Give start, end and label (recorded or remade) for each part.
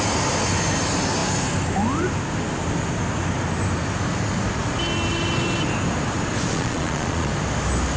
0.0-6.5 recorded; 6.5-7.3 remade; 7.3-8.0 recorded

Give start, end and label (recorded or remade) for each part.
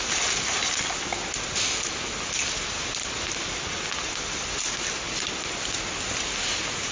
0.0-6.9 recorded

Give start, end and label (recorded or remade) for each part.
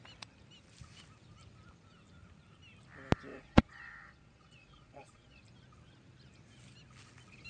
0.0-3.3 recorded; 3.3-5.4 remade; 5.4-7.5 recorded